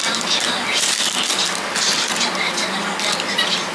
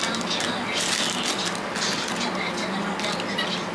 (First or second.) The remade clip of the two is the first